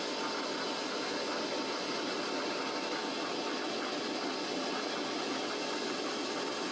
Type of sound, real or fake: real